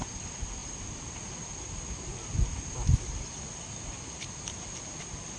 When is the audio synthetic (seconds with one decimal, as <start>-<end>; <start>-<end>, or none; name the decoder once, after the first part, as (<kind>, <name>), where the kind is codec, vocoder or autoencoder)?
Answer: none